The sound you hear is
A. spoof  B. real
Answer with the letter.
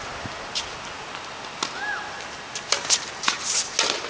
B